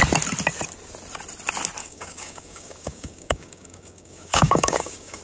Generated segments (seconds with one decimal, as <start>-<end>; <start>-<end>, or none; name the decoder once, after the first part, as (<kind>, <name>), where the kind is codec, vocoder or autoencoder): 1.8-5.2 (codec, DAC)